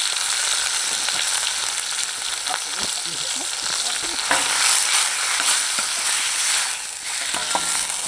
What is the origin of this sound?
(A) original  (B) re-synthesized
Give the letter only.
A